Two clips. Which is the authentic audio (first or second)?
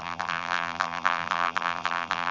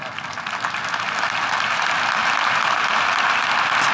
second